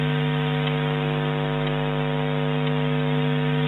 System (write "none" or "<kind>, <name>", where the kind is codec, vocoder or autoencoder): none